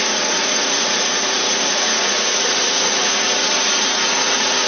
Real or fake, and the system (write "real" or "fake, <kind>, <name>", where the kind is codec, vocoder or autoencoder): fake, vocoder, Vocos